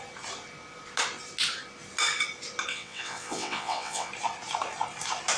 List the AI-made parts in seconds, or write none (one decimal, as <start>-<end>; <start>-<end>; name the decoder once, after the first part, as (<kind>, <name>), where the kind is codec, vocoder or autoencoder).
2.7-4.1 (vocoder, WaveNeXt)